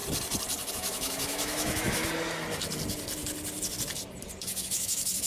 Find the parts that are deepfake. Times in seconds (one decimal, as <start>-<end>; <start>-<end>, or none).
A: 0.7-2.0; 4.4-5.3